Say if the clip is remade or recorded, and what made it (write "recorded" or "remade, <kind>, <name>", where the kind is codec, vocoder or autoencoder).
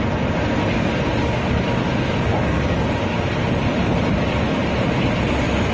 recorded